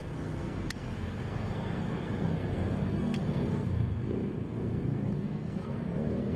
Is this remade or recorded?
remade